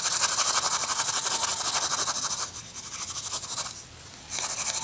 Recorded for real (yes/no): yes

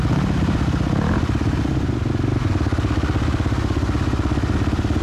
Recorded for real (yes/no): yes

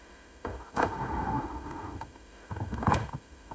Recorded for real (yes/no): no